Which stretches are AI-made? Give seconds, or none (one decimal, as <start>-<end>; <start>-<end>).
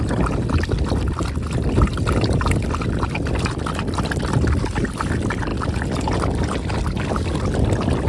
none